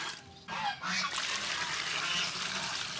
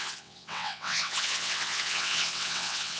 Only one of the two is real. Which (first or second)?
first